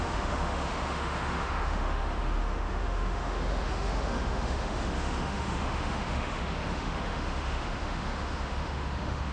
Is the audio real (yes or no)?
no